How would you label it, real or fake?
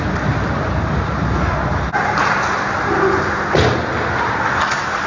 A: real